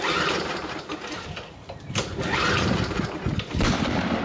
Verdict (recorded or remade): recorded